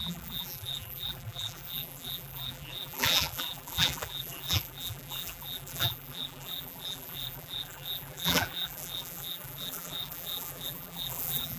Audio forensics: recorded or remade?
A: remade